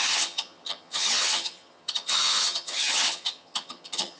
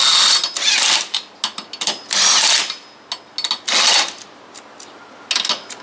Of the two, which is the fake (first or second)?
first